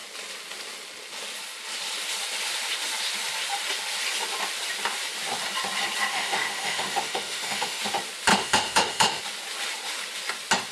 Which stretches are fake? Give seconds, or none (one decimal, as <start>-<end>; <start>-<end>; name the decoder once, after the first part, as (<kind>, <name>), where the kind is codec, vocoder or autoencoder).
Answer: 6.1-7.8 (autoencoder, DAC-VAE); 8.3-9.2